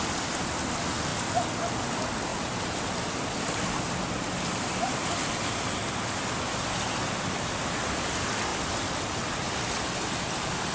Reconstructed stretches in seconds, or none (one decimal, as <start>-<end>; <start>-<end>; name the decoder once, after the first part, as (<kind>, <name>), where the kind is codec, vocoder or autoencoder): 2.3-7.2 (vocoder, BigVGAN v2); 8.5-9.6